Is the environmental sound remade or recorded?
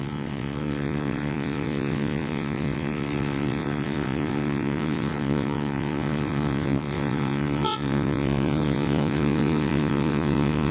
remade